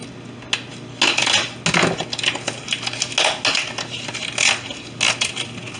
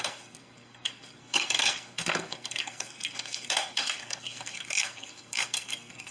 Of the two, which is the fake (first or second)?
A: second